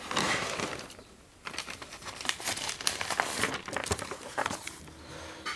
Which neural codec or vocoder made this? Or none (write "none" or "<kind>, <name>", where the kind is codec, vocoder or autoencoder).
none